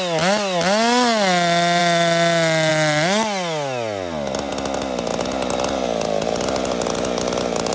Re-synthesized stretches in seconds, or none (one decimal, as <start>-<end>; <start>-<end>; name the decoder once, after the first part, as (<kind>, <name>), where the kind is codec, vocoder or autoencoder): none